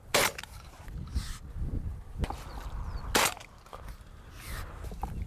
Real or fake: real